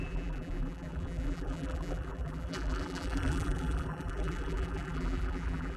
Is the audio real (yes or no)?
no